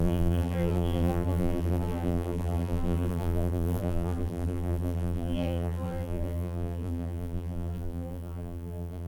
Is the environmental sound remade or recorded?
remade